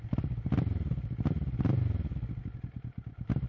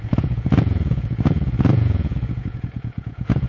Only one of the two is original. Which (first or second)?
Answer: first